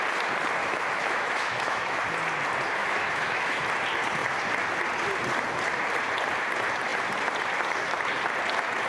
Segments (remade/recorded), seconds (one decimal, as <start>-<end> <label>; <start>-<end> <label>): 0.0-0.6 recorded; 0.6-2.0 remade; 2.0-2.8 recorded; 2.8-3.6 remade; 3.6-8.9 recorded